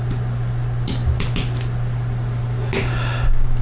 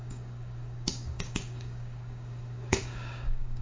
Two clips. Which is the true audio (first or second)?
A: first